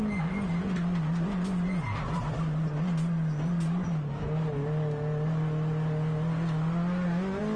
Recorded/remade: recorded